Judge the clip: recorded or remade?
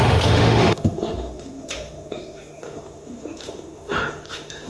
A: remade